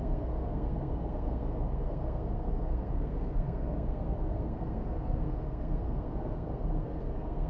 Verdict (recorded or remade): remade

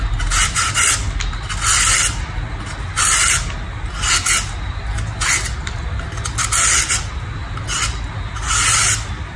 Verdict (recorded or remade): recorded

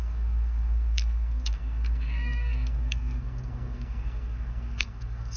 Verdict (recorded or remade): remade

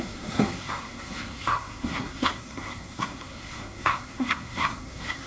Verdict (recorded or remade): remade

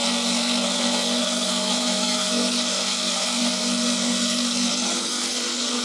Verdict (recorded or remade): remade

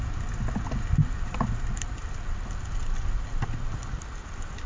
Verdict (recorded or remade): recorded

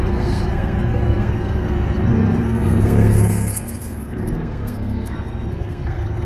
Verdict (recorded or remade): remade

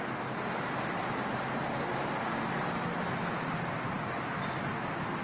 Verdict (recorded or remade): recorded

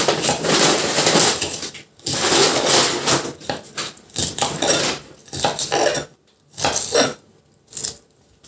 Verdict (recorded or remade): recorded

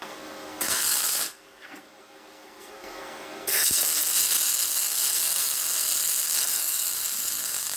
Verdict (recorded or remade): remade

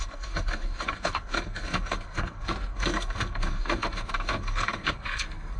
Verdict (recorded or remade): remade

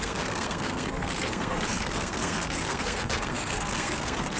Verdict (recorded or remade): remade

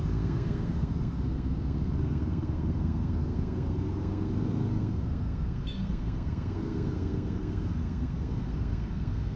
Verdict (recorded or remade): remade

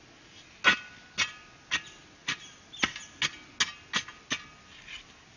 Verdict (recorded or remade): recorded